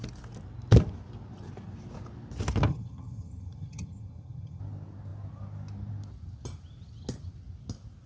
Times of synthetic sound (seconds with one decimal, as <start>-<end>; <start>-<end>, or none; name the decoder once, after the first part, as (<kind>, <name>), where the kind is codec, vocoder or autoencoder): 2.7-4.6 (vocoder, HiFi-GAN)